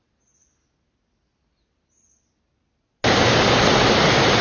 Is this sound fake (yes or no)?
no